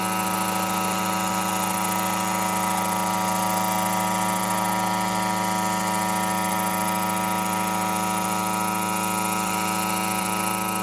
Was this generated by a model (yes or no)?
no